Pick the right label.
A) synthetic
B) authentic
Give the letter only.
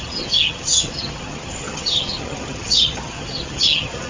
A